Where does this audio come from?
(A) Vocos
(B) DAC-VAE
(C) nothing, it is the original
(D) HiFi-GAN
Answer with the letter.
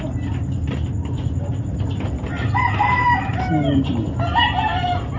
C